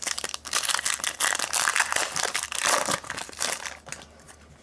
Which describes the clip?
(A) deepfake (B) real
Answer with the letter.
B